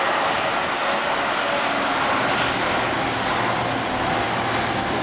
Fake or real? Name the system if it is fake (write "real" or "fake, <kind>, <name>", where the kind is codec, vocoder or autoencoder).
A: real